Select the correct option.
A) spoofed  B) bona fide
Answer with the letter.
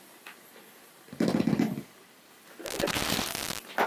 B